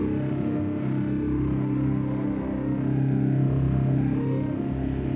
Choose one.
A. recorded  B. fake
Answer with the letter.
B